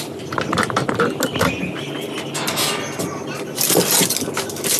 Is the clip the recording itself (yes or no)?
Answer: yes